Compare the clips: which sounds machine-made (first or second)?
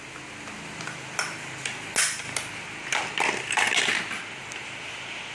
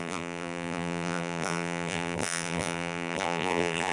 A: second